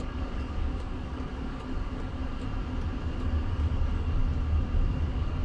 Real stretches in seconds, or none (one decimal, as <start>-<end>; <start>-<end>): 2.2-3.2; 4.2-4.9